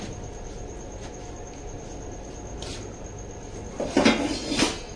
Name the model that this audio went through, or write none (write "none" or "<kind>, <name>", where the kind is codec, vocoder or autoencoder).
none